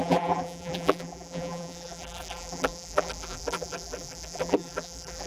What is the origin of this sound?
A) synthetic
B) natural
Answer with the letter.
A